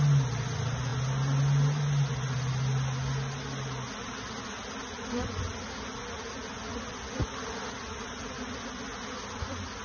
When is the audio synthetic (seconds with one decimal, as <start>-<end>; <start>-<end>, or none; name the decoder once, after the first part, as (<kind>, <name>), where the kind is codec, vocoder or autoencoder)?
none

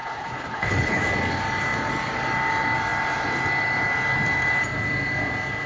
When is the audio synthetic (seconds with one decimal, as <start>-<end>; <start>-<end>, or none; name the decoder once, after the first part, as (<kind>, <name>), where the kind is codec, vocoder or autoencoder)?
0.0-1.0 (codec, HILCodec)

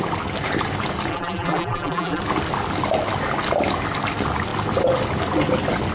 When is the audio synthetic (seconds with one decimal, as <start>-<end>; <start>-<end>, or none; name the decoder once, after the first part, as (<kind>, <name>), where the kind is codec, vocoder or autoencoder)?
1.1-2.2 (vocoder, BigVGAN v2)

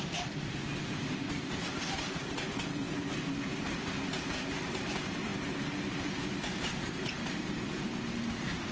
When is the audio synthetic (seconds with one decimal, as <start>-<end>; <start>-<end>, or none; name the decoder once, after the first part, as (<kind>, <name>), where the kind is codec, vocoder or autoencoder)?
none

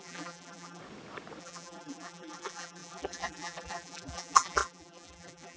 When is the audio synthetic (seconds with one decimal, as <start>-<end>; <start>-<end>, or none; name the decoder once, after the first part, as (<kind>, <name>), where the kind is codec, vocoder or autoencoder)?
0.0-0.8 (vocoder, BigVGAN v2); 1.4-5.6

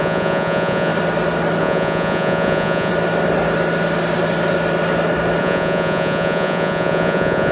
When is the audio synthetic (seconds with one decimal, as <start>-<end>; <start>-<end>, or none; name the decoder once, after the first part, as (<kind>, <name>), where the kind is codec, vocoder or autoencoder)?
0.0-0.9 (vocoder, Vocos); 1.6-2.9; 5.4-7.5

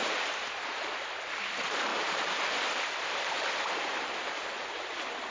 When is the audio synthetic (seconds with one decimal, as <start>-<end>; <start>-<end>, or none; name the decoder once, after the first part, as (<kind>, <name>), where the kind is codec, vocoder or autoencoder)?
none